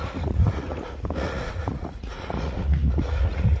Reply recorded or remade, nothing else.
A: remade